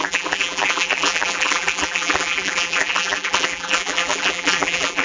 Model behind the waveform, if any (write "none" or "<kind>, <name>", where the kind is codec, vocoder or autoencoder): vocoder, BigVGAN v2